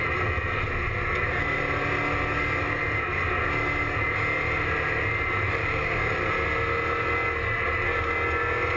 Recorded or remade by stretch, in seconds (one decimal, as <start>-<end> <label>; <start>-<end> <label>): 0.0-5.6 recorded; 5.6-6.2 remade; 6.2-8.8 recorded

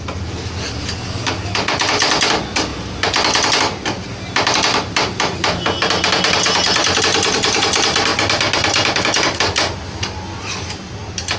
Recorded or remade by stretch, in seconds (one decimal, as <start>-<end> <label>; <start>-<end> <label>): 0.0-11.4 recorded

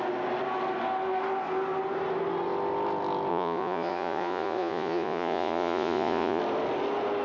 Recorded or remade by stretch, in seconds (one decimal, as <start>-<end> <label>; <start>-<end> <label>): 0.0-3.3 recorded; 3.3-6.4 remade; 6.4-7.2 recorded

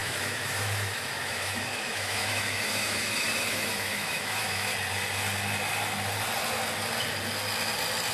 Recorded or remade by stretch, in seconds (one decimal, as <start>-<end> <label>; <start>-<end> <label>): 0.0-4.7 remade; 4.7-8.1 recorded